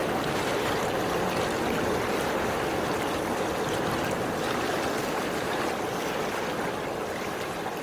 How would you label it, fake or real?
real